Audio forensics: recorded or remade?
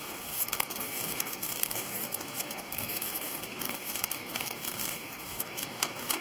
remade